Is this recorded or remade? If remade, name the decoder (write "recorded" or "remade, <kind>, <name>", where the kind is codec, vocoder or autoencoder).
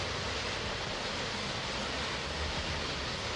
recorded